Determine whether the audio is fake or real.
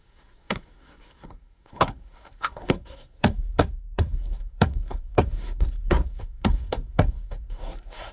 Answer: fake